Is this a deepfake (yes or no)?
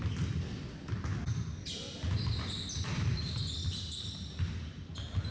no